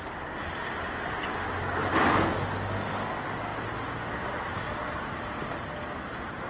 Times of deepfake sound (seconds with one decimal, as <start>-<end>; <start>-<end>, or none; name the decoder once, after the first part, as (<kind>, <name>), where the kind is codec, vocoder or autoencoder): 3.5-5.2 (vocoder, BigVGAN v2)